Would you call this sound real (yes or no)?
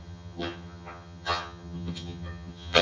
no